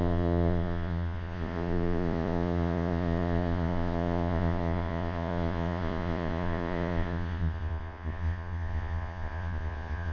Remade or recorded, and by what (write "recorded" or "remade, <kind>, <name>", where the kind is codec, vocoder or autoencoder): remade, vocoder, Vocos